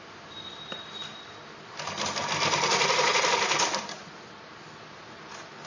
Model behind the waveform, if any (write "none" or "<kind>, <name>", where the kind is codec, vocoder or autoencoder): none